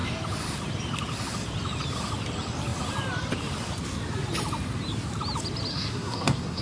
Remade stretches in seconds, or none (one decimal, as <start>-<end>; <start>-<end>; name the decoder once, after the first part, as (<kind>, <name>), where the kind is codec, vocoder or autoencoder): 5.7-6.6 (codec, SNAC)